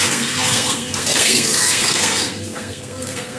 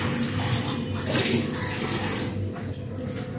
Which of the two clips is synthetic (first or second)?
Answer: first